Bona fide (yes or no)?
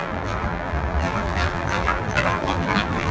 no